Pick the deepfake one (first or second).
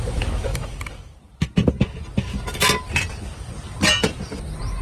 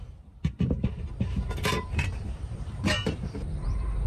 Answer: second